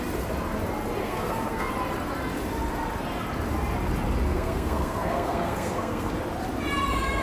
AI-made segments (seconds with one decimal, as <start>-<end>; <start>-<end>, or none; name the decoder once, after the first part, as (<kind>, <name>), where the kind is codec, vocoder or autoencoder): 1.0-1.7 (codec, SNAC); 4.3-6.1